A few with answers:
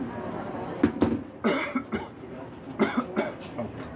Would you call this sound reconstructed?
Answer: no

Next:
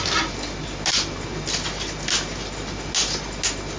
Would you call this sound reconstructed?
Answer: no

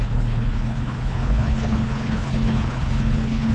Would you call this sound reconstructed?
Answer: yes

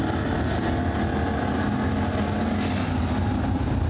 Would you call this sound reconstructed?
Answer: no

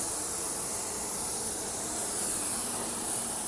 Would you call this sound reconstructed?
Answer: no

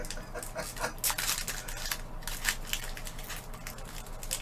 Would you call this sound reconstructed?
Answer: no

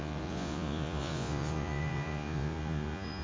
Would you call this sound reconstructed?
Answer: yes